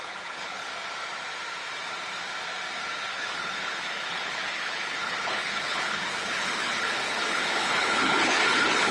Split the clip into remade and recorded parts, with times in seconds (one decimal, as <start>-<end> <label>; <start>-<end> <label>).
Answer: 0.0-0.7 remade; 0.7-3.1 recorded; 3.1-8.9 remade